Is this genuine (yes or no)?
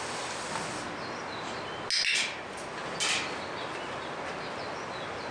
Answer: yes